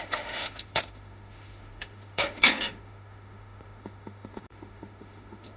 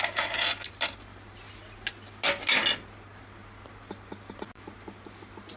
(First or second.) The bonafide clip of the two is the second